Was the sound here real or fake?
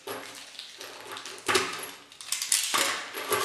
real